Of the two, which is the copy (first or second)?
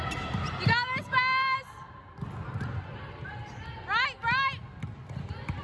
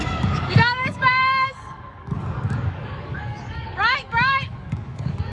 second